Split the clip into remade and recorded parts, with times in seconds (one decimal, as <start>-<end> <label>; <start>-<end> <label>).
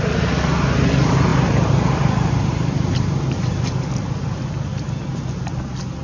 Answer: 0.0-1.3 recorded; 1.3-4.4 remade; 4.4-6.0 recorded